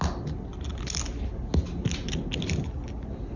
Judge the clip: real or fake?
real